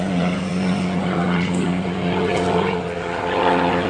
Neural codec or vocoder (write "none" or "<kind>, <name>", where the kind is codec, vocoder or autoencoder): vocoder, Vocos